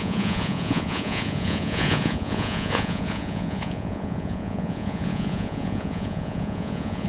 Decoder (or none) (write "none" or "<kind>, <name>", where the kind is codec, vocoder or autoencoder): vocoder, Vocos